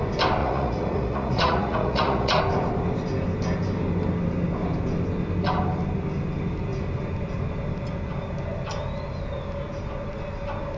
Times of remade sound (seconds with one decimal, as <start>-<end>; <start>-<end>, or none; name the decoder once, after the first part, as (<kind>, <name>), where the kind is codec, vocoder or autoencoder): 0.4-2.4 (vocoder, Vocos)